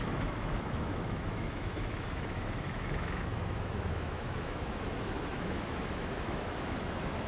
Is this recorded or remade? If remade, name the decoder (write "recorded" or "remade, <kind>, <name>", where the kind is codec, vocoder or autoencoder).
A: remade, autoencoder, DAC-VAE